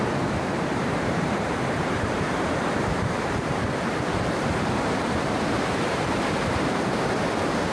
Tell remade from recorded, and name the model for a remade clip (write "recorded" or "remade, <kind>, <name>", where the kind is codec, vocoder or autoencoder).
remade, vocoder, BigVGAN v2